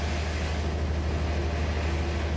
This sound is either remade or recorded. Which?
recorded